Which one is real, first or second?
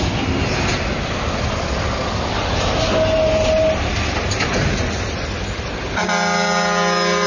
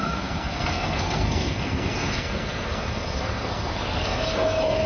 first